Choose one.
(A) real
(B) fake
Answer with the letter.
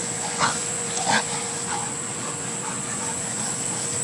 B